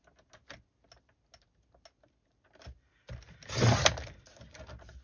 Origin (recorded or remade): recorded